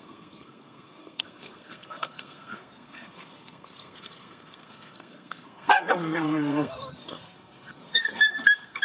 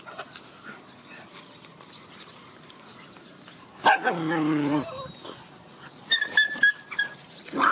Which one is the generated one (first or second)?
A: first